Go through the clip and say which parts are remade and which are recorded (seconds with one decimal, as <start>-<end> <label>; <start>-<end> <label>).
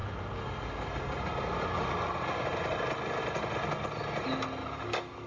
0.0-4.6 recorded; 4.6-5.3 remade